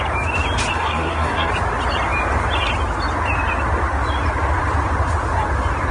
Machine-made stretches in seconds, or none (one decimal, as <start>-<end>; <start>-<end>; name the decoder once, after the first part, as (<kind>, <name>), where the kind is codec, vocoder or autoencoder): 0.7-1.5 (codec, SNAC)